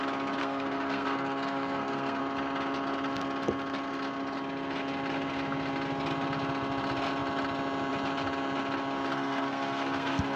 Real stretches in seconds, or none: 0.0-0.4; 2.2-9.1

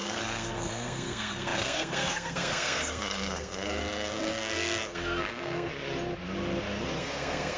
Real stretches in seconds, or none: 5.7-7.0

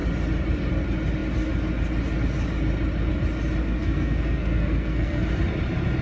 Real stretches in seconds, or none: 0.0-3.6; 5.2-6.0

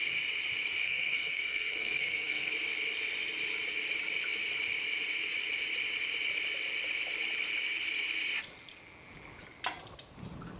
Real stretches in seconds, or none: 0.0-0.8; 2.5-10.6

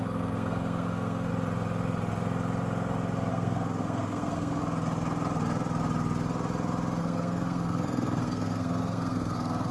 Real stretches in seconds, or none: 1.3-3.3; 4.6-7.0

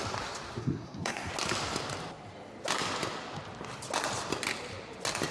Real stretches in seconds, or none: 0.0-0.6; 1.3-5.3